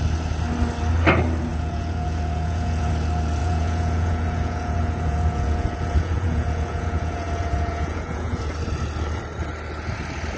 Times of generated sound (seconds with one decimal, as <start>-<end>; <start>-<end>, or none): 1.5-2.9; 3.4-8.4